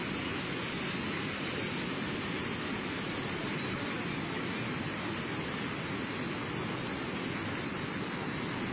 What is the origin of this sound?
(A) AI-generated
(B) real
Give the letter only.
B